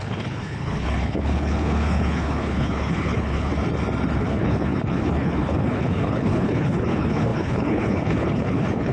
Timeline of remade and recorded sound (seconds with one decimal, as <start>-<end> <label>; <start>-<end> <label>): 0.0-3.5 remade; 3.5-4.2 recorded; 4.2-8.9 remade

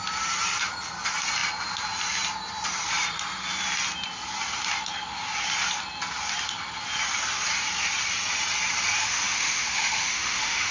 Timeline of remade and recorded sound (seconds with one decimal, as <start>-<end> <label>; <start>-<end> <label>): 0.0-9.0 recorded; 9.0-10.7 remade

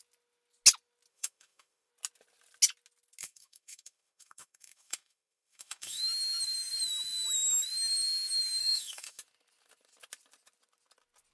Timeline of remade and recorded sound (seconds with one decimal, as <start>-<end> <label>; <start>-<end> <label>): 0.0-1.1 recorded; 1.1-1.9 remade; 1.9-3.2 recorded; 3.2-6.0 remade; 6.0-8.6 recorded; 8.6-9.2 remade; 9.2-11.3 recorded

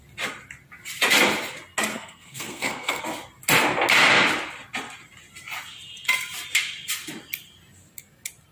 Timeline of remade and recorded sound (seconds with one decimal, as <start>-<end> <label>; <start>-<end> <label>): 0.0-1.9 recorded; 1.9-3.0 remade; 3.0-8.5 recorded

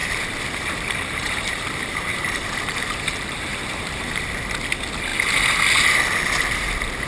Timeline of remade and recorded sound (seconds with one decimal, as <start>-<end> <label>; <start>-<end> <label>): 0.0-4.3 remade; 4.3-7.1 recorded